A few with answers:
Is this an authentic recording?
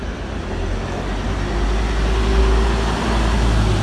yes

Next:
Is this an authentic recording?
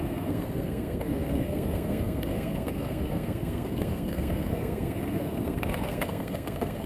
no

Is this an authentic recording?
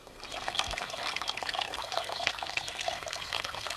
no